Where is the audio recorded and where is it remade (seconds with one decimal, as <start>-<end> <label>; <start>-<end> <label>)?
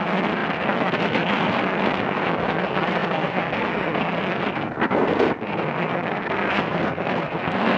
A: 0.0-7.8 remade